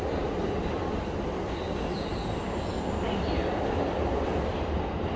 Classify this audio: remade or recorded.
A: recorded